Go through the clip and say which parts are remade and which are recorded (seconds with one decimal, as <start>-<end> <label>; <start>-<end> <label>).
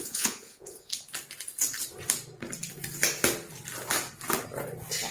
0.0-0.9 remade; 0.9-5.1 recorded